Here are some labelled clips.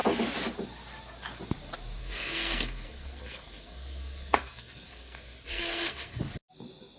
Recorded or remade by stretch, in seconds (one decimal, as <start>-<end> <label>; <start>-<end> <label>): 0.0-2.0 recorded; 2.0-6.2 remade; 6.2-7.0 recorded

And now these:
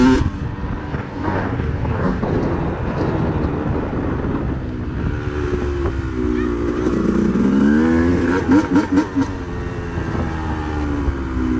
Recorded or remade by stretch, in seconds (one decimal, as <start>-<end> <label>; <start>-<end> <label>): 0.0-0.8 recorded; 0.8-2.2 remade; 2.2-11.6 recorded

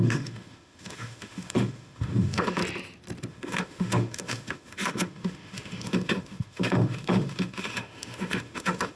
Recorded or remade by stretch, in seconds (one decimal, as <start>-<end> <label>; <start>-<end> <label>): 0.0-2.6 remade; 2.6-3.3 recorded; 3.3-9.0 remade

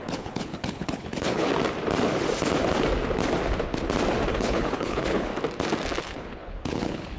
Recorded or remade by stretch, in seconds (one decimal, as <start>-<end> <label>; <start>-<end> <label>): 0.0-1.5 remade; 1.5-4.3 recorded; 4.3-5.3 remade; 5.3-6.0 recorded; 6.0-7.2 remade

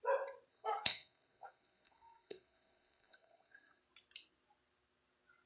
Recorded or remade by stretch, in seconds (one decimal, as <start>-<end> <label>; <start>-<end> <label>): 0.0-0.5 recorded; 0.5-3.8 remade; 3.8-5.5 recorded

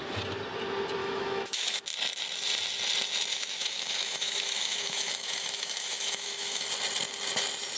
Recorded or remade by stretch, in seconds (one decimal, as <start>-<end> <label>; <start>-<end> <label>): 0.0-1.0 recorded; 1.0-1.8 remade; 1.8-3.3 recorded; 3.3-6.6 remade; 6.6-7.8 recorded

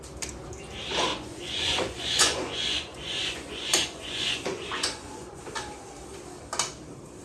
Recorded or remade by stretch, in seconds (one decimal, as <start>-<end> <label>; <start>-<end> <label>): 0.0-1.1 recorded; 1.1-5.4 remade; 5.4-7.2 recorded